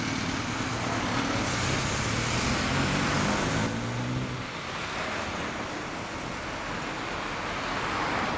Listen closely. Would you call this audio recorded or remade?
recorded